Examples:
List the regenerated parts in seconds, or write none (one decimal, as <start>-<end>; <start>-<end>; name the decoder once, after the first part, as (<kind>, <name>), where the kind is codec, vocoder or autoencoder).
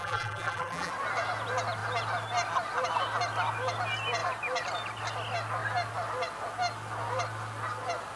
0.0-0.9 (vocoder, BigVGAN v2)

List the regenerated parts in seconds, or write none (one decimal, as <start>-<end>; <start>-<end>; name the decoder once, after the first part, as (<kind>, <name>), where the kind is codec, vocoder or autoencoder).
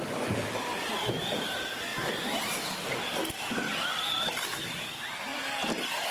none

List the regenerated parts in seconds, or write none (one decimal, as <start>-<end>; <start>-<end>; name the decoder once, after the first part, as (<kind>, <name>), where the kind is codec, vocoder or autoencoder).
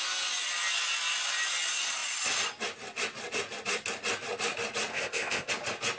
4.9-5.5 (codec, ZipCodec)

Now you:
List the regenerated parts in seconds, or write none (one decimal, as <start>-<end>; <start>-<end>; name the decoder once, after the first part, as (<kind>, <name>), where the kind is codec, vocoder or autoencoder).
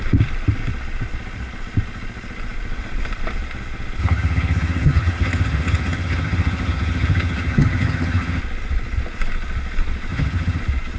4.0-8.4 (vocoder, HiFi-GAN); 10.1-10.6